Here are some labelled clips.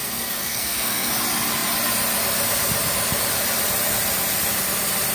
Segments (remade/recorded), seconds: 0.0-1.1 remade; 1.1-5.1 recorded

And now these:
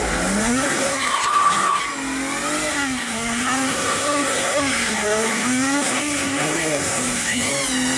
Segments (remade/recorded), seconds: 0.0-0.4 recorded; 0.4-1.8 remade; 1.8-2.7 recorded; 2.7-7.5 remade; 7.5-8.0 recorded